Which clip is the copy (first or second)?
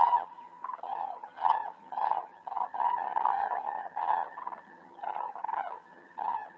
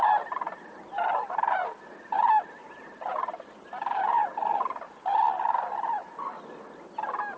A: first